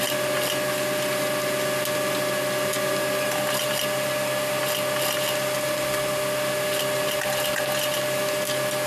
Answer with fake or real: real